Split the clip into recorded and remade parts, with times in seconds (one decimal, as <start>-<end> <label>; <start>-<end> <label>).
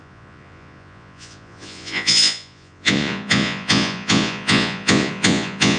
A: 0.0-5.8 remade